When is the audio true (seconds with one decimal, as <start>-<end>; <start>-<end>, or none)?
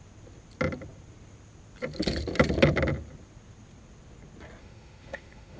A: 0.0-4.6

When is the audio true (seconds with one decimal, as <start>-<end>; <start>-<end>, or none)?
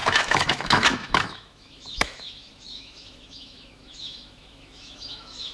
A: none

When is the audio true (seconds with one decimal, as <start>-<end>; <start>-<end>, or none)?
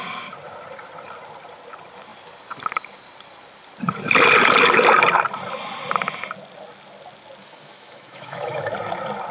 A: 0.0-7.4; 8.7-9.3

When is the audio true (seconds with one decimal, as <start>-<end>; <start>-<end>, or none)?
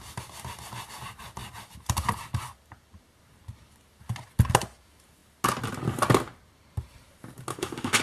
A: 0.0-7.5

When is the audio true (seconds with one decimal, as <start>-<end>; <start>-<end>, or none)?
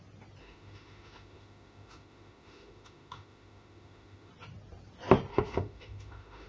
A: 0.0-0.4; 4.3-5.3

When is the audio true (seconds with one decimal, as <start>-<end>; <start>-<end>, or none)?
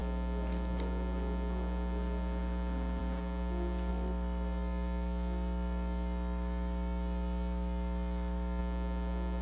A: 0.0-3.9; 8.6-9.4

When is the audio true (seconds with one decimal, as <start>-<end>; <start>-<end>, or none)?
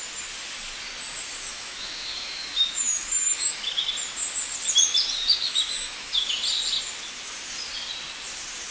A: 0.0-1.5; 3.9-5.2; 6.3-8.7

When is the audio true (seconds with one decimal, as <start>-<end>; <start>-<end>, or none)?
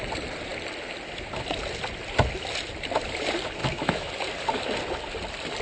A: 0.0-3.6; 4.1-5.6